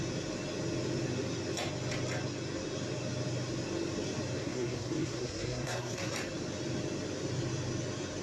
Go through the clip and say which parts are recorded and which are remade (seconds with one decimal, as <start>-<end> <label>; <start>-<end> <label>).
0.0-4.4 recorded; 4.4-6.1 remade; 6.1-8.2 recorded